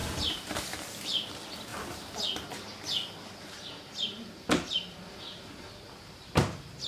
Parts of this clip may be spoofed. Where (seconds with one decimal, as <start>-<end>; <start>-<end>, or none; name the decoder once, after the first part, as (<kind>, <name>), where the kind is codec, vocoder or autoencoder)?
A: 0.0-1.0 (vocoder, BigVGAN v2)